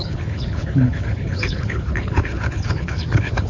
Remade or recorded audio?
remade